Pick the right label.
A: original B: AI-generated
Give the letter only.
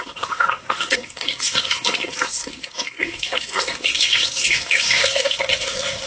B